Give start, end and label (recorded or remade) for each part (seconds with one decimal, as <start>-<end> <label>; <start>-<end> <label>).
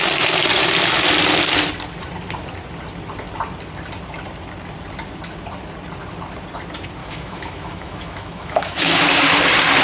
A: 0.0-7.0 recorded; 7.0-9.4 remade; 9.4-9.8 recorded